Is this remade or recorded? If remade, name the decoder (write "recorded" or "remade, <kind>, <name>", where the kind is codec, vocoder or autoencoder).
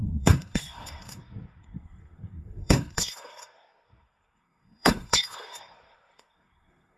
remade, codec, SNAC